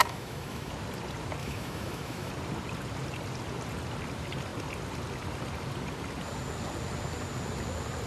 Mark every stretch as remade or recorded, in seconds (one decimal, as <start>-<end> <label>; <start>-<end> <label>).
0.0-0.7 remade; 0.7-1.4 recorded; 1.4-2.3 remade; 2.3-8.1 recorded